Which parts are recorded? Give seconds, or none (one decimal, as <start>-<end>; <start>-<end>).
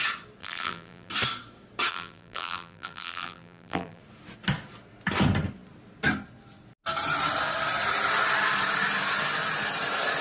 0.0-0.4; 1.1-1.9; 4.0-10.2